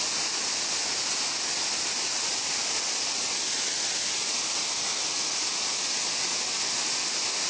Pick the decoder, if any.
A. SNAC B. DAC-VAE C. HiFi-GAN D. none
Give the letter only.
D